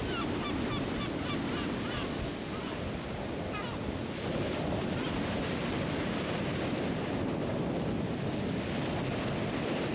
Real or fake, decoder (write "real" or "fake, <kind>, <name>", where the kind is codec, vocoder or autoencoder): real